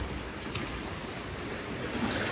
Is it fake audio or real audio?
real